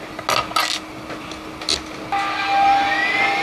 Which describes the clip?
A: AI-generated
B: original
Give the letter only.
B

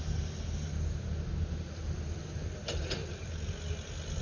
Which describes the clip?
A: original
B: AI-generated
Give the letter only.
A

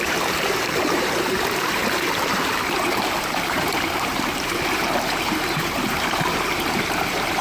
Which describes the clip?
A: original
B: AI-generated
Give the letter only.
B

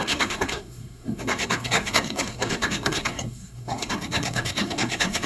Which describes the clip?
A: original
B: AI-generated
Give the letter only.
B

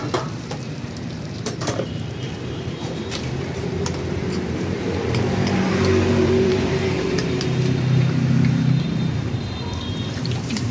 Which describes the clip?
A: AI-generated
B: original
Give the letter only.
A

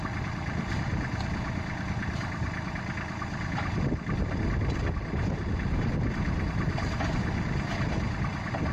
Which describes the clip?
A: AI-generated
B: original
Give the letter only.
B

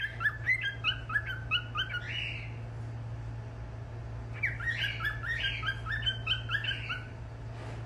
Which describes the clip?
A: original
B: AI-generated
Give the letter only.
A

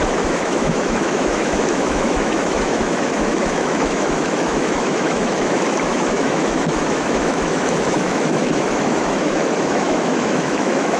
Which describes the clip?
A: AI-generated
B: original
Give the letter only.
A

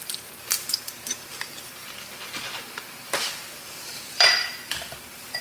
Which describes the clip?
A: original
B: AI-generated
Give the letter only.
B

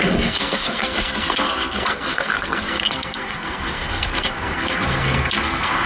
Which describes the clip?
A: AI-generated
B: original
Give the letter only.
A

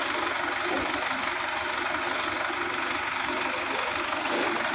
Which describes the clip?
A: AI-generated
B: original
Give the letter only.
B